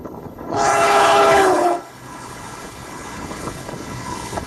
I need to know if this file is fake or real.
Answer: fake